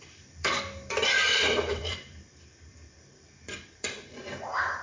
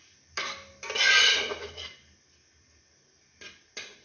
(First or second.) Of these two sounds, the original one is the second